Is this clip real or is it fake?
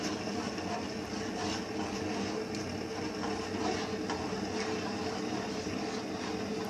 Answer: real